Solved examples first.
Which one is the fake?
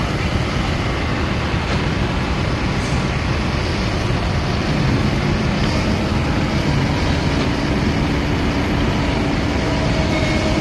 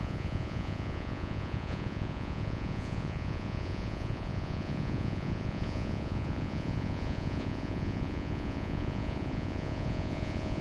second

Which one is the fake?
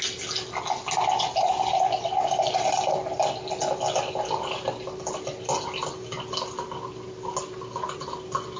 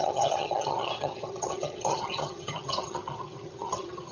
second